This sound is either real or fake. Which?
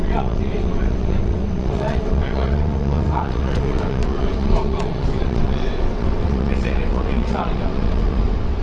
fake